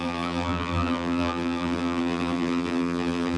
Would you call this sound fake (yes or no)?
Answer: yes